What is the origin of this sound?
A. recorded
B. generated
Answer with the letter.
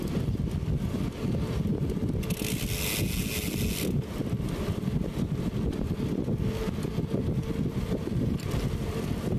A